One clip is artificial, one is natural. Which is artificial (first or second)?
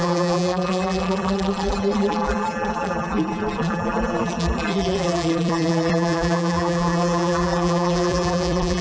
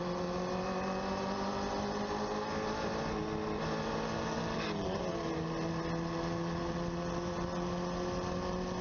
first